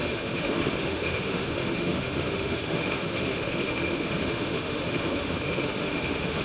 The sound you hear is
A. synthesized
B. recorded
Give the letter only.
A